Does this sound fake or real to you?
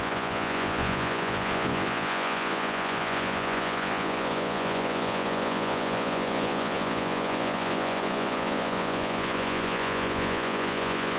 fake